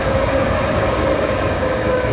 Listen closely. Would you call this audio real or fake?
fake